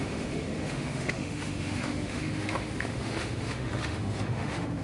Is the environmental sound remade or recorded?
remade